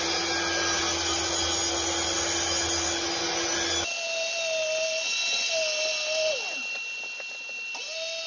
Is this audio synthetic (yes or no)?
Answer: no